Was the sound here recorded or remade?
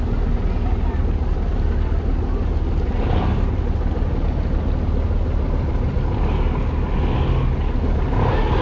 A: recorded